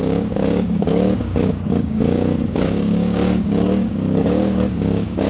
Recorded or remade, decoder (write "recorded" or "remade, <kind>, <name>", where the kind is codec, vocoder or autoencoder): remade, codec, DAC